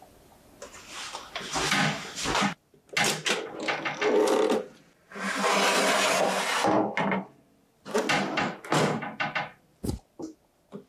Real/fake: real